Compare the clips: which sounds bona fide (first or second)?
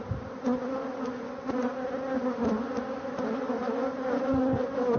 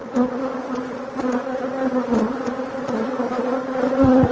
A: first